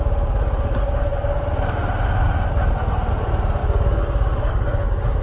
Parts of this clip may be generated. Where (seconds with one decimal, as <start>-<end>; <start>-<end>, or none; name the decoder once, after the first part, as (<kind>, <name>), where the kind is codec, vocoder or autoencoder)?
3.6-5.2 (codec, DAC)